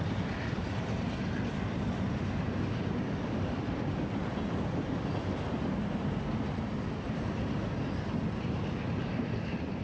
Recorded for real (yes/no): yes